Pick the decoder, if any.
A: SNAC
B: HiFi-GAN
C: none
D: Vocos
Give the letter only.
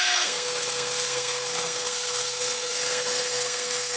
A